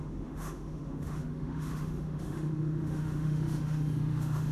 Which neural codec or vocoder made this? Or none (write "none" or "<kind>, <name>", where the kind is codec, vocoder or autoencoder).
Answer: autoencoder, DAC-VAE